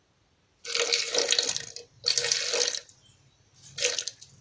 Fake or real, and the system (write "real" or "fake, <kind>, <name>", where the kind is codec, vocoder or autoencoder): real